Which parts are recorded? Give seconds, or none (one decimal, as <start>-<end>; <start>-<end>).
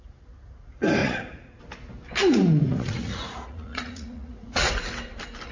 0.0-1.0; 1.6-2.2; 4.7-5.5